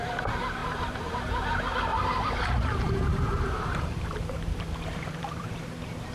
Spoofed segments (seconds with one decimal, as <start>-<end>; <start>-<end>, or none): 0.6-1.3; 1.9-5.6